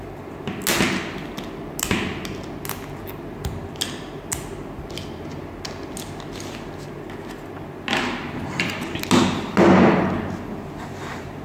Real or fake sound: real